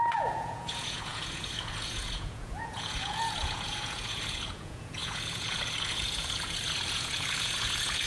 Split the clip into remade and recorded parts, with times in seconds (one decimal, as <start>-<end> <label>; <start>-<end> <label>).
0.0-8.1 remade